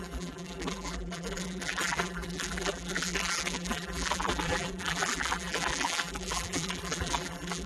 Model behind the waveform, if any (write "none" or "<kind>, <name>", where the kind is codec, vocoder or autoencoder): vocoder, BigVGAN v2